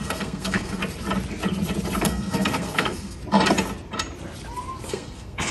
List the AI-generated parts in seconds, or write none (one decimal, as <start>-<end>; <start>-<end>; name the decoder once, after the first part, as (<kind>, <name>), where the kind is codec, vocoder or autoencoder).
0.0-0.8 (codec, SNAC); 2.0-3.2; 4.9-5.5